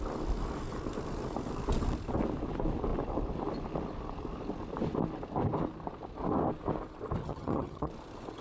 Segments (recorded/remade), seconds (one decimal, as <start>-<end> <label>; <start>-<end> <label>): 0.0-7.2 recorded; 7.2-7.9 remade; 7.9-8.4 recorded